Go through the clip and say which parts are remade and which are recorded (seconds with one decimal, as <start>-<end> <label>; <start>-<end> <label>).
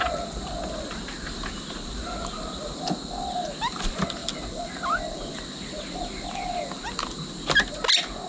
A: 0.0-8.3 recorded